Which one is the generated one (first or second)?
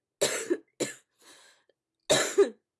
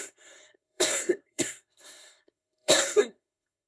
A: second